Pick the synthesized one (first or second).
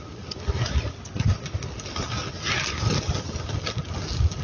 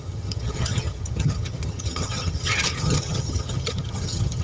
second